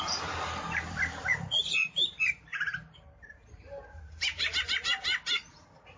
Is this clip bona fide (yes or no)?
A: no